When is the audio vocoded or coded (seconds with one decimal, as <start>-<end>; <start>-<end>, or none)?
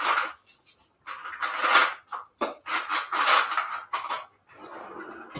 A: none